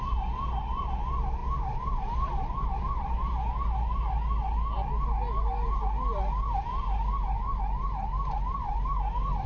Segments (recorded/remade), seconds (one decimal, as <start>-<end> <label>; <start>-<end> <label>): 0.0-9.5 recorded